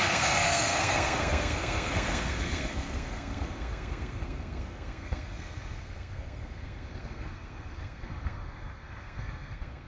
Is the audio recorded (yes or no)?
no